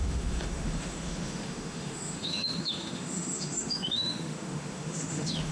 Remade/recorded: remade